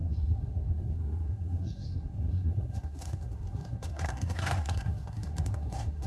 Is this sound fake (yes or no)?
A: yes